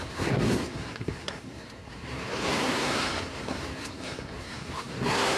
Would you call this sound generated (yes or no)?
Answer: yes